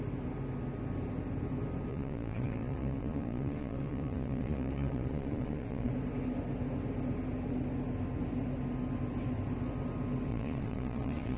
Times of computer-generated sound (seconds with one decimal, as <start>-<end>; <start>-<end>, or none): 1.9-5.9; 10.3-11.4